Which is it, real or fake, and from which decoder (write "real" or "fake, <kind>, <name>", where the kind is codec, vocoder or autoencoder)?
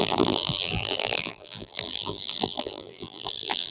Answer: fake, vocoder, BigVGAN v2